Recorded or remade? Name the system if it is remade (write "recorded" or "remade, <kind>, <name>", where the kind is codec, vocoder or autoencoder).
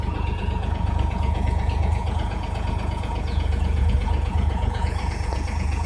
remade, vocoder, Vocos